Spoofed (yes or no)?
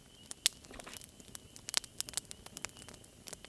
no